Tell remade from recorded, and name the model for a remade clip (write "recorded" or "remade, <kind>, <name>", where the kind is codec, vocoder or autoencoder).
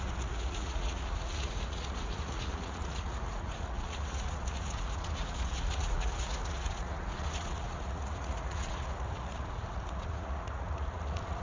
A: remade, vocoder, Vocos